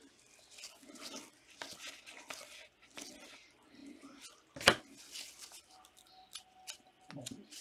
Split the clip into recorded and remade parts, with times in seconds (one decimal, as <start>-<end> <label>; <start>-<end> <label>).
0.0-7.6 recorded